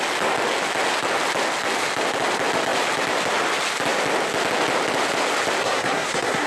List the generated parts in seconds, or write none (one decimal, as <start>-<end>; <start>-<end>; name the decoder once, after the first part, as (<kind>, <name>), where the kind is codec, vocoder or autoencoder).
5.6-6.5 (codec, SNAC)